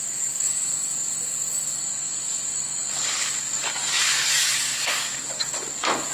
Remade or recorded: remade